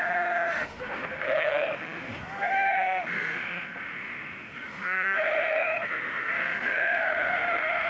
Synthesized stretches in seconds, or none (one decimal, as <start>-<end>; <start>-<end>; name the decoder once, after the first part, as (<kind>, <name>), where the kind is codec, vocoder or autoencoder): 0.0-7.9 (autoencoder, DAC-VAE)